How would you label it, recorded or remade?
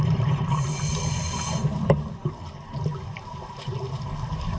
remade